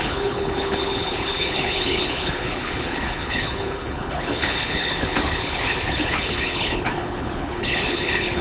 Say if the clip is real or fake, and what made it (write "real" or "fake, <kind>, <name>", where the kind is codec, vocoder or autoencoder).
fake, codec, HILCodec